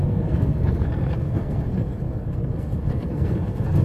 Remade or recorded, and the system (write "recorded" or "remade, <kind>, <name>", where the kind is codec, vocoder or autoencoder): remade, codec, SNAC